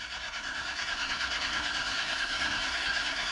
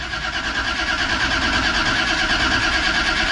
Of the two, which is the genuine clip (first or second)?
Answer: second